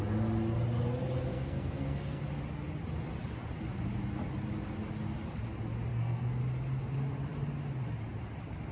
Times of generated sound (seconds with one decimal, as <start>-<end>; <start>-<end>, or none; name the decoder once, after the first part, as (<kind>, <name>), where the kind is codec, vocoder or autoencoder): 1.3-2.2 (codec, SNAC); 5.9-6.4